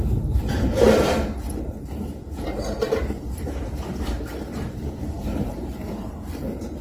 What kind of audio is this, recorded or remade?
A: remade